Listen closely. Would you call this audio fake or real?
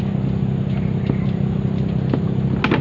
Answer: real